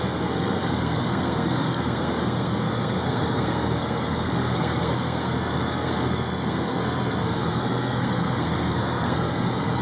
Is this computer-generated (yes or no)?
yes